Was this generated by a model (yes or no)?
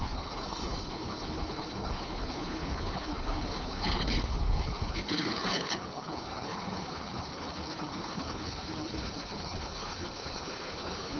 yes